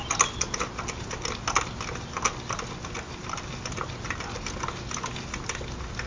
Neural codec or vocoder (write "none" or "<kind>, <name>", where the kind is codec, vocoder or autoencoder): none